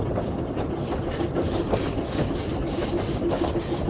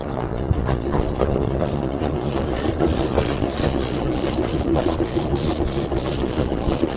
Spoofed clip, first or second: second